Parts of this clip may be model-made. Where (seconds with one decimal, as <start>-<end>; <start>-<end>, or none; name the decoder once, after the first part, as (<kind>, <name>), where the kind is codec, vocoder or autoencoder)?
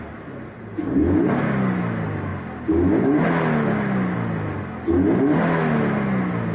none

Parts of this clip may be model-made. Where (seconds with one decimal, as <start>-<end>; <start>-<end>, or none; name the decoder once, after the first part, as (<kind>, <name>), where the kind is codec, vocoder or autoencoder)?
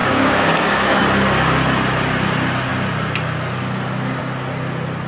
0.0-1.0 (codec, DAC)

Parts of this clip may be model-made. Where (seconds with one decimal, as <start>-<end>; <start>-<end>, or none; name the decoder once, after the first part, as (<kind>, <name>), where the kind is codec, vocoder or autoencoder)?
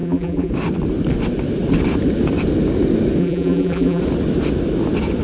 0.0-0.5 (vocoder, BigVGAN v2); 3.2-4.0